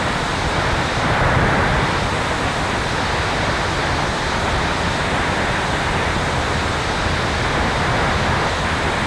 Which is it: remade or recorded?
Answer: recorded